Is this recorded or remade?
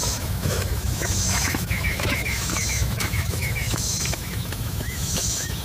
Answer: remade